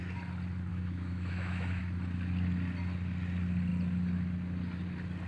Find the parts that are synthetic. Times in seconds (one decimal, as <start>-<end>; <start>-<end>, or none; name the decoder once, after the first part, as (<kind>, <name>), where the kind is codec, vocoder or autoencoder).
0.7-1.8 (autoencoder, DAC-VAE)